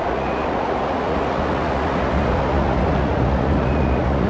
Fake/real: fake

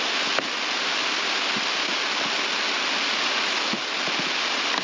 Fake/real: real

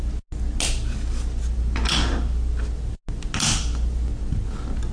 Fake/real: real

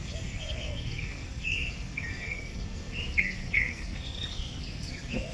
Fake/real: fake